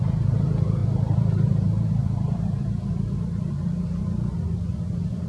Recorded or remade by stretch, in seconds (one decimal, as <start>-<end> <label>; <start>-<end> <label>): 0.0-0.8 recorded; 0.8-4.0 remade; 4.0-5.3 recorded